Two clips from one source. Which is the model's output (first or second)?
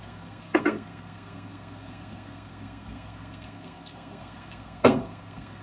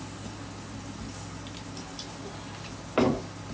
first